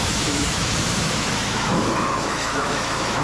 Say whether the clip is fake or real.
fake